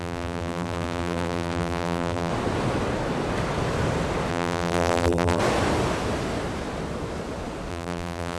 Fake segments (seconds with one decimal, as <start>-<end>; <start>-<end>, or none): 0.0-2.3; 4.3-5.4; 7.7-8.4